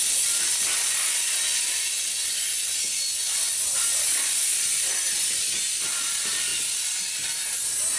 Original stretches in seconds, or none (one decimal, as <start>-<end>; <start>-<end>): 0.0-8.0

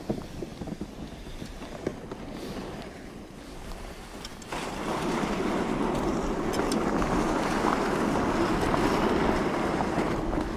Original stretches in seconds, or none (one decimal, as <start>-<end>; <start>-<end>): 0.5-1.3; 4.3-8.9

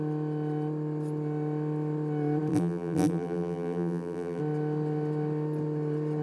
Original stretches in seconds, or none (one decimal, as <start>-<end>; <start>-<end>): 0.0-2.5; 4.4-6.2

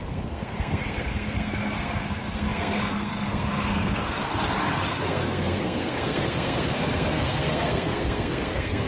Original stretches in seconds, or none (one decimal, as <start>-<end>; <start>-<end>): 4.2-4.9

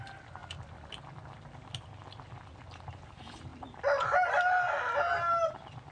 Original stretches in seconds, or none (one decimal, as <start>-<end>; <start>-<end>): 0.0-5.9

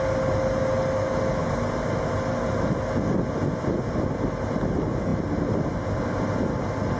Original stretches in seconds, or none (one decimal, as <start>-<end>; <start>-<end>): 0.0-7.0

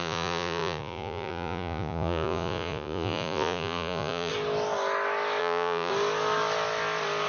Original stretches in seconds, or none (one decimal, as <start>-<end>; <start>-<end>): 4.3-5.4; 5.9-7.3